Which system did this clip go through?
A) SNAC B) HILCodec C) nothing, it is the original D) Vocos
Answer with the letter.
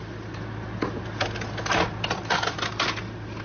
C